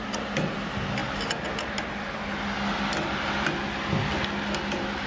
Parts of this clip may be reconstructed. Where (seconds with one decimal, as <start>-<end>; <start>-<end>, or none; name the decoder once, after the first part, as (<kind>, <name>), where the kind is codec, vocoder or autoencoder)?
none

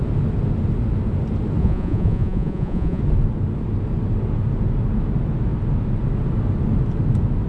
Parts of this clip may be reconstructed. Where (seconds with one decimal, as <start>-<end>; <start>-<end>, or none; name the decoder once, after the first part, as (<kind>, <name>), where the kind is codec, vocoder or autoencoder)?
1.6-3.0 (vocoder, Vocos)